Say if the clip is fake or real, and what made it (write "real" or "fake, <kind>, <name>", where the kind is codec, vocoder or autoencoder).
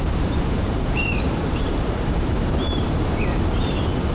fake, vocoder, BigVGAN v2